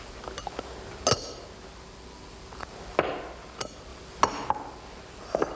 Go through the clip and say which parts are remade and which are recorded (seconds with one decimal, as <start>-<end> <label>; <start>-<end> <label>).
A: 0.0-5.5 recorded